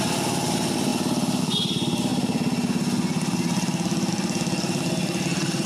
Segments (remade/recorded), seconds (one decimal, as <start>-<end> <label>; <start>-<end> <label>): 0.0-5.7 recorded